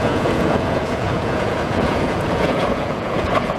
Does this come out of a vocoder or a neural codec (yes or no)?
yes